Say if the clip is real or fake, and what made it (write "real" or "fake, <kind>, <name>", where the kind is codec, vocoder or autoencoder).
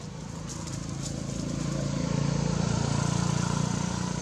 real